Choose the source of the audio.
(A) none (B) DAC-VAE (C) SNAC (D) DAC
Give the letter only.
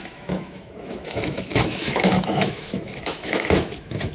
B